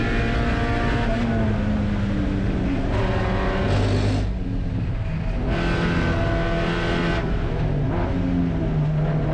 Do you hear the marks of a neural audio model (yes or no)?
no